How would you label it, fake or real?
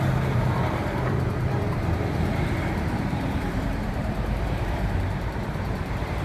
fake